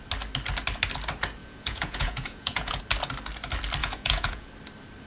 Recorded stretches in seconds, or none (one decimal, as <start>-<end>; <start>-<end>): 0.0-1.4; 2.8-3.8; 4.5-5.1